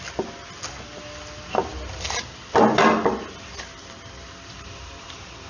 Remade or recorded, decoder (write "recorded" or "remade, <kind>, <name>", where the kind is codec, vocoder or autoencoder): recorded